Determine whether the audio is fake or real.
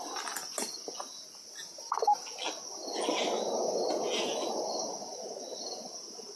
real